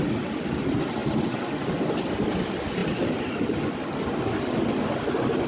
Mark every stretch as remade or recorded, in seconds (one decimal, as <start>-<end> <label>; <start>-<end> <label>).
0.0-5.5 recorded